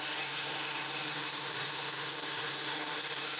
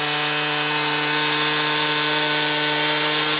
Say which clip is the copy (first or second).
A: first